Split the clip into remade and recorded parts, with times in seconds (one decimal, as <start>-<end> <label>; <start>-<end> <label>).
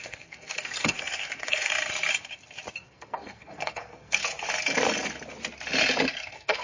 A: 0.0-1.7 remade; 1.7-2.8 recorded; 2.8-4.2 remade; 4.2-6.1 recorded; 6.1-6.6 remade